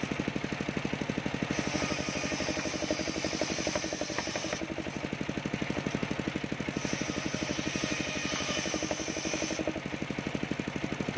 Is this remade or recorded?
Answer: recorded